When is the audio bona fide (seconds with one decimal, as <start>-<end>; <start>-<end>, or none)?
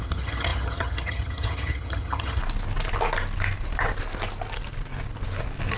2.4-5.8